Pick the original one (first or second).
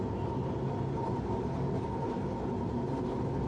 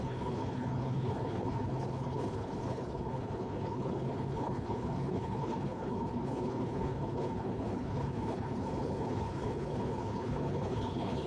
first